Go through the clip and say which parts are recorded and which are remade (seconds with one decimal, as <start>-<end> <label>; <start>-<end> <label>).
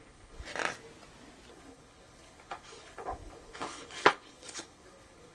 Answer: 0.0-0.5 remade; 0.5-1.5 recorded; 1.5-5.3 remade